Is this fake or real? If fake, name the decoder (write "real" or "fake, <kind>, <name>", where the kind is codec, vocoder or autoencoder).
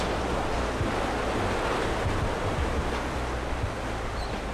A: real